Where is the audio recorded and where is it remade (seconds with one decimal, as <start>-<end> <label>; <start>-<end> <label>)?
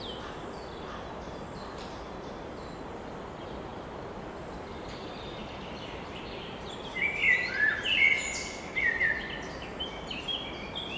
0.0-11.0 recorded